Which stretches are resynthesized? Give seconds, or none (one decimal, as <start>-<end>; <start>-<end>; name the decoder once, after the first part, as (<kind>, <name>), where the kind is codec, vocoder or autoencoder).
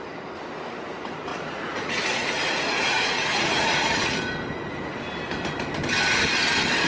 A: 1.3-4.2 (vocoder, Vocos)